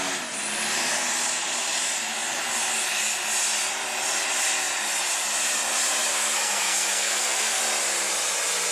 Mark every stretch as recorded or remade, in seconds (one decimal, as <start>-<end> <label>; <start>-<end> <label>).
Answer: 0.0-6.1 recorded; 6.1-7.6 remade; 7.6-8.7 recorded